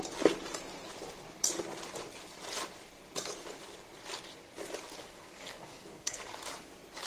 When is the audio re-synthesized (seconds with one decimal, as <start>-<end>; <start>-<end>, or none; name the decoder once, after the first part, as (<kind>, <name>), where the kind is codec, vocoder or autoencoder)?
5.0-6.2 (codec, SNAC)